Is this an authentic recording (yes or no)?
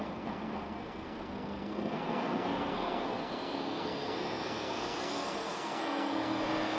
no